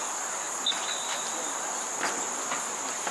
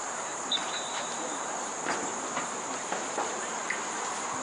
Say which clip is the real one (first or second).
first